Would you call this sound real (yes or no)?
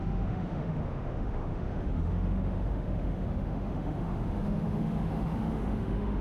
no